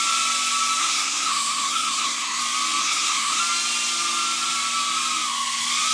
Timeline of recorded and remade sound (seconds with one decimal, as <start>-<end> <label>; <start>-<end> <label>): 0.0-0.8 recorded; 0.8-2.4 remade; 2.4-2.8 recorded; 2.8-3.4 remade; 3.4-5.9 recorded